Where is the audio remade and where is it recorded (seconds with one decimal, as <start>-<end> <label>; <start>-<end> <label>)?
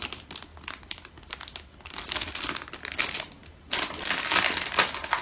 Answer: 0.0-5.2 recorded